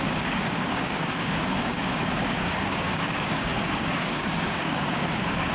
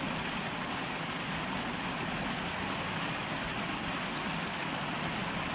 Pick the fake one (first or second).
first